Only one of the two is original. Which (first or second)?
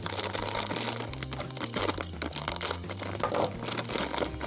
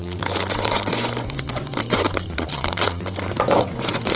first